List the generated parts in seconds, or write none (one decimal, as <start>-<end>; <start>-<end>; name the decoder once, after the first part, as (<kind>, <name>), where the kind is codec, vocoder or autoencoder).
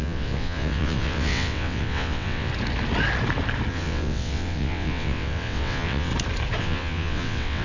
0.0-2.5 (vocoder, WaveNeXt); 3.7-6.1; 6.6-7.6